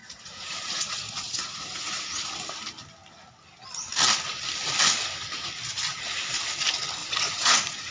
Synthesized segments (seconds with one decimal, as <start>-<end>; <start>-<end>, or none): 0.0-2.3; 7.0-7.9

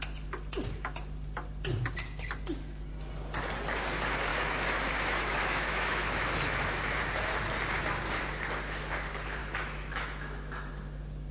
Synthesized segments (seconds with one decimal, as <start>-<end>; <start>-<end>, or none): 4.3-7.0; 9.4-10.7

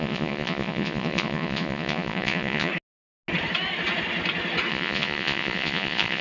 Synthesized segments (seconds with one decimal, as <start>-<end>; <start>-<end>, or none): 0.0-2.7; 4.7-6.2

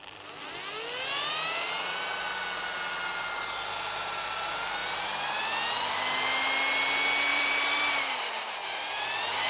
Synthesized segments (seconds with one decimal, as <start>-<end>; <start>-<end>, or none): 4.8-5.7; 7.3-9.5

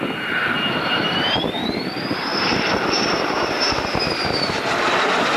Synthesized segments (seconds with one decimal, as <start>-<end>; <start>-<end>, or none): 0.4-1.8; 2.3-4.6